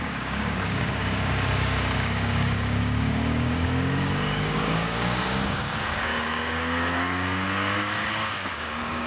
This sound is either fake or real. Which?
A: fake